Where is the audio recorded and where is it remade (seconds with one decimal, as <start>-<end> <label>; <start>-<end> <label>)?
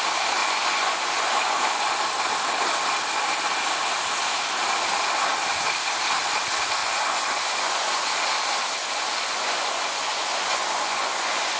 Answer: 0.0-0.4 recorded; 0.4-1.9 remade; 1.9-6.8 recorded; 6.8-8.1 remade; 8.1-8.8 recorded; 8.8-11.6 remade